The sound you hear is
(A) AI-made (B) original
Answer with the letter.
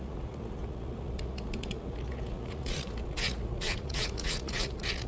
A